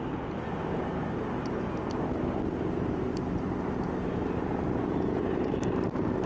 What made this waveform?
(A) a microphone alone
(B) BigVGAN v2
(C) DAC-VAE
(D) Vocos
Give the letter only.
A